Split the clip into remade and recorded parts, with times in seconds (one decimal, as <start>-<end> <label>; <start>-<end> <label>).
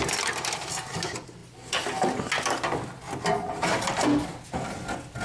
0.0-5.2 recorded